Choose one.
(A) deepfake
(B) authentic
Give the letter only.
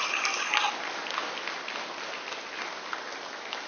B